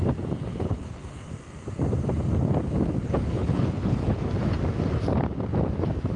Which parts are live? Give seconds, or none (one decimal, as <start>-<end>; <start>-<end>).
0.0-0.5; 1.3-3.0; 4.3-6.2